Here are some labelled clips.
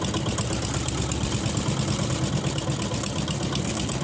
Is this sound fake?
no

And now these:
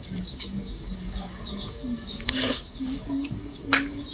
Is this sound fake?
yes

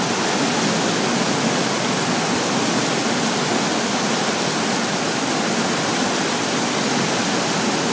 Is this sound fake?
no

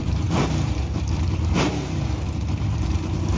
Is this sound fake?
yes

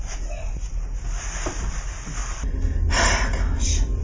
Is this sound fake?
no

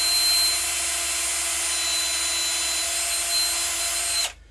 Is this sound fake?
no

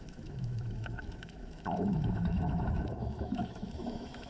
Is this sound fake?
yes